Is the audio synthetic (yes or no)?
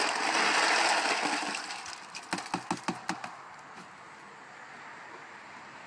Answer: no